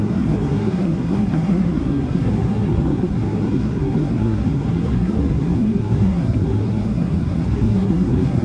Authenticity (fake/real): fake